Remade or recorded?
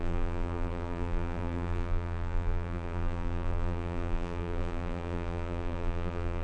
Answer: remade